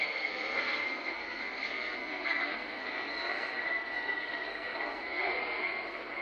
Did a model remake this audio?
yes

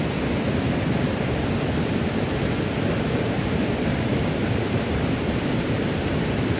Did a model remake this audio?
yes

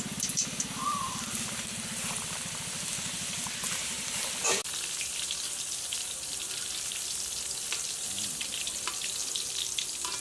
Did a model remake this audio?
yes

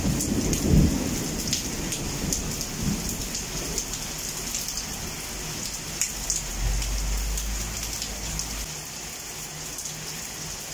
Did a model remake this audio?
no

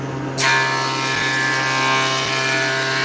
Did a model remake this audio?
no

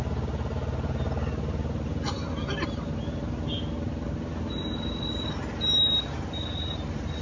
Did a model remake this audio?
no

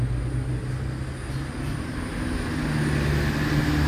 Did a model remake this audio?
no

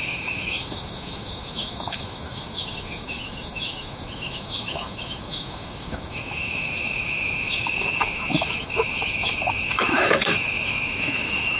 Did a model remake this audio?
yes